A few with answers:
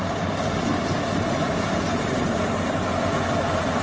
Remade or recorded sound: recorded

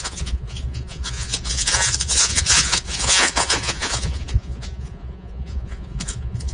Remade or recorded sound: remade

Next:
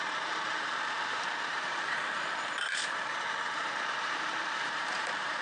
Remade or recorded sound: remade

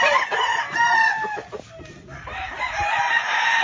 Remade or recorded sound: recorded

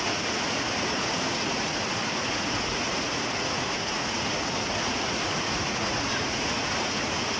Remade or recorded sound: remade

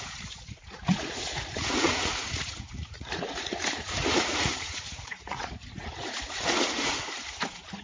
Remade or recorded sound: remade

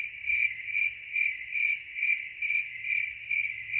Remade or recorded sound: recorded